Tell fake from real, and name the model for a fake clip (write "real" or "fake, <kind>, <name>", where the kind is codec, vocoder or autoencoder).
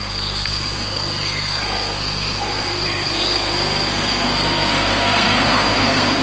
fake, codec, SNAC